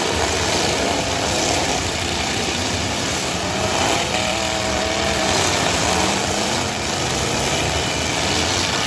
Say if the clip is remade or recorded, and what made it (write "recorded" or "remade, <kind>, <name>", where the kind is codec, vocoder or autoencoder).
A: remade, vocoder, BigVGAN v2